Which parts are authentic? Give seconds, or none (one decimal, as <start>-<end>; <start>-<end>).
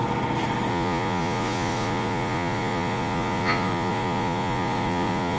0.0-0.7